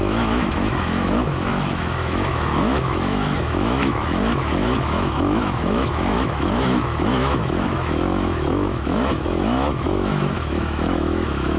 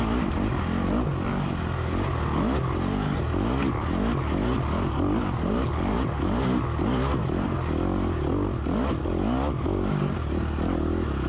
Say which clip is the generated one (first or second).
first